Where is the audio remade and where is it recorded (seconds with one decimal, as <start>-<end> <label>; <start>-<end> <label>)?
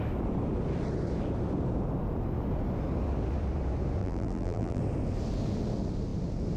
0.0-4.0 recorded; 4.0-4.8 remade; 4.8-6.6 recorded